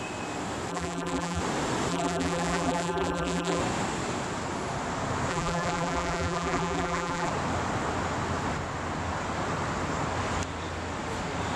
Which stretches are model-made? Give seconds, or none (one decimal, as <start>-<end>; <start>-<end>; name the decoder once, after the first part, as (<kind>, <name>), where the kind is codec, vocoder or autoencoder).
0.7-1.4 (vocoder, BigVGAN v2); 1.9-3.6; 5.3-7.3

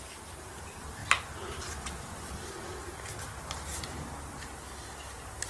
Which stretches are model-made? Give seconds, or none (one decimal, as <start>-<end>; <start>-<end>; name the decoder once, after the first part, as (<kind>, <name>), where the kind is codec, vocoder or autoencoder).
none

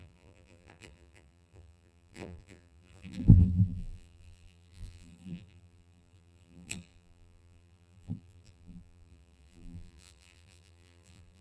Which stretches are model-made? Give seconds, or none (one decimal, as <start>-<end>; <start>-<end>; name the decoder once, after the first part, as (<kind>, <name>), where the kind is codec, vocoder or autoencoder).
0.0-11.4 (vocoder, BigVGAN v2)

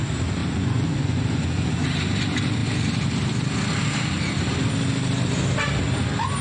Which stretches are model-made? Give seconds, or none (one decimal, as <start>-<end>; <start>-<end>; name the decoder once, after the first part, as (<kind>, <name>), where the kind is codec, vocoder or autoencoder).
0.4-1.9 (vocoder, Vocos)

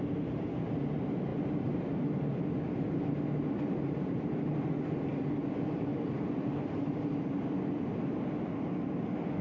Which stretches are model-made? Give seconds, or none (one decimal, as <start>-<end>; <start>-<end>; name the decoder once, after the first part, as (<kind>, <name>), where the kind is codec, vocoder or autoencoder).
none

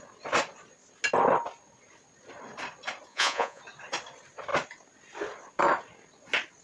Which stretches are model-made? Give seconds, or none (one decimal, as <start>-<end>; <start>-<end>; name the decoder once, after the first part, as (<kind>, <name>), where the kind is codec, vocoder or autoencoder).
3.1-3.6 (vocoder, Vocos)

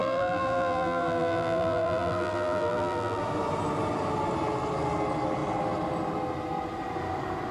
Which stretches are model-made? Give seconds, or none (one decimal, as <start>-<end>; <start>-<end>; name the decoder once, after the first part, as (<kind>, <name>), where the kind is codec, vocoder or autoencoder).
0.0-3.2 (vocoder, BigVGAN v2)

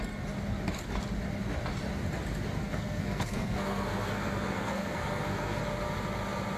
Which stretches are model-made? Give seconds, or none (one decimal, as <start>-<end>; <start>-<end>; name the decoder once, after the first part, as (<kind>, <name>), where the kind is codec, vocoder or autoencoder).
2.6-5.6 (codec, SNAC)